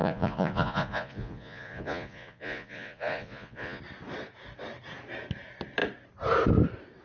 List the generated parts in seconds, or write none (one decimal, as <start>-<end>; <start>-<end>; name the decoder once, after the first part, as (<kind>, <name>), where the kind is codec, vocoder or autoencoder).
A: 0.0-3.8 (vocoder, Vocos)